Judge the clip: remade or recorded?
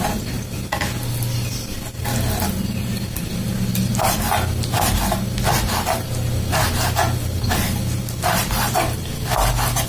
recorded